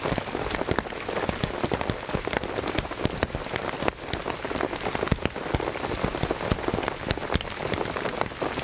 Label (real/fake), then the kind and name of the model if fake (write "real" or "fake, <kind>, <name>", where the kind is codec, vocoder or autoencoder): fake, vocoder, BigVGAN v2